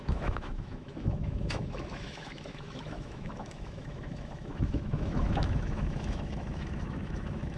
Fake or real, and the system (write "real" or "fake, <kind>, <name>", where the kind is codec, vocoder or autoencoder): fake, autoencoder, DAC-VAE